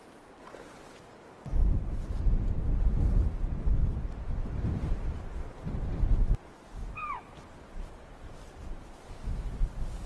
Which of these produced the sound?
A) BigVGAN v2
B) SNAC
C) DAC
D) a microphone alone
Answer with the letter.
A